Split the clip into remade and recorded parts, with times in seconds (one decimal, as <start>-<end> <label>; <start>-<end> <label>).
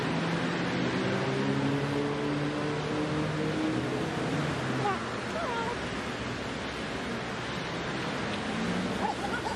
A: 0.0-9.6 recorded